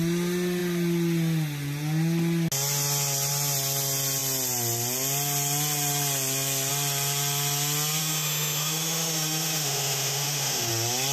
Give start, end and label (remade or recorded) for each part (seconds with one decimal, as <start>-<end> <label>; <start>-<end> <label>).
0.0-8.0 recorded; 8.0-10.7 remade; 10.7-11.1 recorded